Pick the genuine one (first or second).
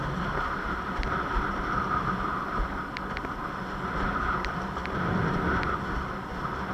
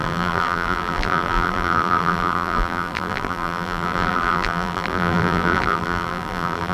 first